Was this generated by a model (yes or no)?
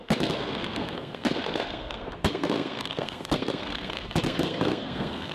yes